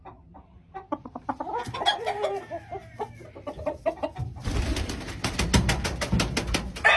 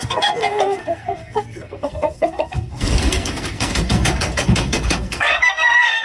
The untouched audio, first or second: first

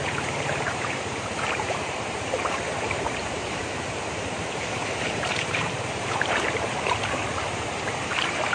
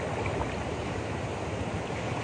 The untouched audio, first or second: second